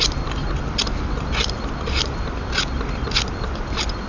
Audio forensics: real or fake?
real